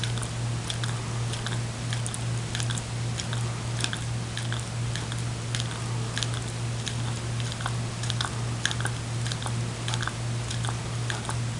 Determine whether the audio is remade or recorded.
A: recorded